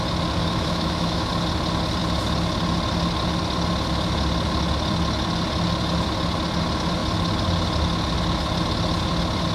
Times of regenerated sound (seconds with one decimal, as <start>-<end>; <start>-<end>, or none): 0.4-1.3